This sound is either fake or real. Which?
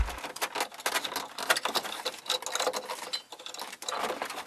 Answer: real